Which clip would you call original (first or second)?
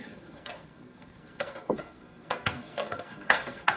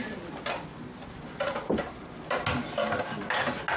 second